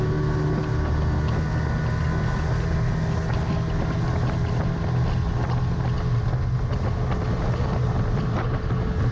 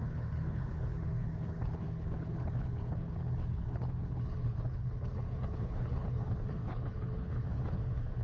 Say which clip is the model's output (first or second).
second